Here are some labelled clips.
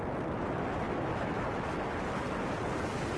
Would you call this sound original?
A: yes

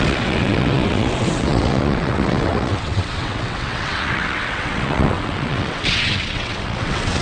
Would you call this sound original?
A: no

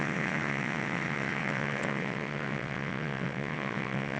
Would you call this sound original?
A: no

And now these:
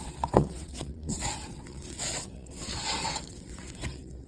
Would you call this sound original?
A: no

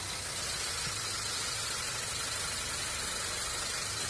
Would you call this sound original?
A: yes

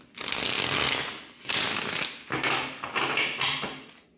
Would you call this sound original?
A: yes